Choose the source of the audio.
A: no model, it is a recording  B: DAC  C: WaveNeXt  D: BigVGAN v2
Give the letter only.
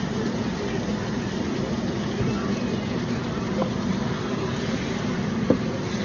A